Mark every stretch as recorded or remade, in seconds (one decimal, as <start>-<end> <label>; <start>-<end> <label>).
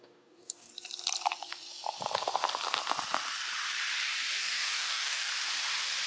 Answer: 0.0-0.7 remade; 0.7-4.4 recorded; 4.4-5.3 remade; 5.3-6.1 recorded